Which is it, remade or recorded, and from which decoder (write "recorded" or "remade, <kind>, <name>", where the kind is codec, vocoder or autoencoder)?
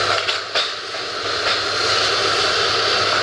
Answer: recorded